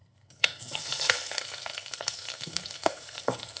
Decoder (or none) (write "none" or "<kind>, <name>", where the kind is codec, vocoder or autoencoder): codec, SNAC